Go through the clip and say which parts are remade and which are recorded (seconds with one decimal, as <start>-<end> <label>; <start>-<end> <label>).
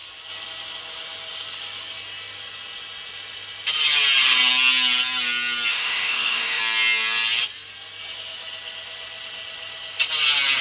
0.0-5.7 recorded; 5.7-6.6 remade; 6.6-10.6 recorded